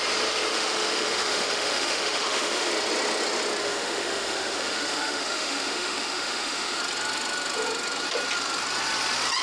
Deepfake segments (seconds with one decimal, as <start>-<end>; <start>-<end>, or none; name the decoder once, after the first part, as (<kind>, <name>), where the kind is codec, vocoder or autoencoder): 0.5-2.7 (autoencoder, DAC-VAE); 3.6-6.8

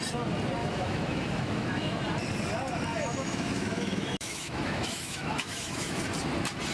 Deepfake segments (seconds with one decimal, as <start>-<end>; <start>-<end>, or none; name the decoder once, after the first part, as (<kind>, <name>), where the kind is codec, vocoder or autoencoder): 0.6-2.0 (autoencoder, DAC-VAE); 2.9-6.0

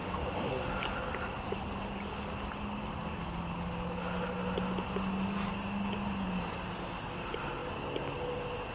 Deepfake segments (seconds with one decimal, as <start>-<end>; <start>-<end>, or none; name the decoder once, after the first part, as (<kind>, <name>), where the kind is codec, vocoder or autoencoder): 0.0-0.5 (autoencoder, DAC-VAE)

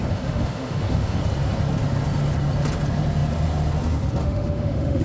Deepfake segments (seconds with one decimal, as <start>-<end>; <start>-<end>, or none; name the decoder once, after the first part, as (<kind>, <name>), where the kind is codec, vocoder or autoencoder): 0.0-1.2 (autoencoder, DAC-VAE); 4.2-5.0